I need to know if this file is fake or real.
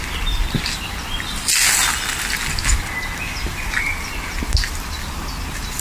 real